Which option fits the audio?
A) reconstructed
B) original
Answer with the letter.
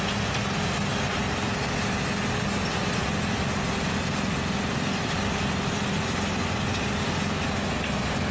B